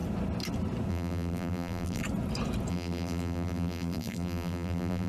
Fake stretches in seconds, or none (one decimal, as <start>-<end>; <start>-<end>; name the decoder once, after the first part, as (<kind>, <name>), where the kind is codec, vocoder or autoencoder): 0.9-2.0 (vocoder, BigVGAN v2); 2.7-5.1